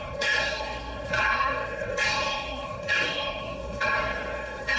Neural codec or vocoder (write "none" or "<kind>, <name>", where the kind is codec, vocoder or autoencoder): codec, SNAC